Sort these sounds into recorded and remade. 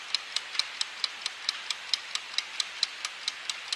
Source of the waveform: recorded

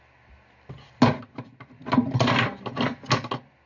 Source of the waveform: recorded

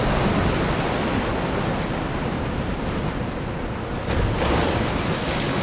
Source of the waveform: recorded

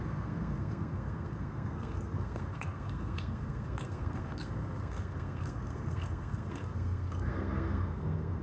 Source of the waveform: remade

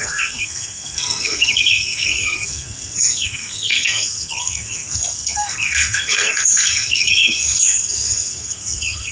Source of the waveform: remade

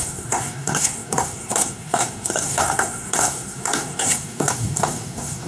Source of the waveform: remade